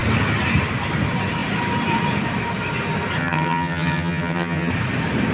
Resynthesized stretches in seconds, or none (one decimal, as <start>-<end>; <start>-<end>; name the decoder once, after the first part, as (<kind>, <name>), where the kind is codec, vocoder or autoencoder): 3.2-4.7 (vocoder, HiFi-GAN)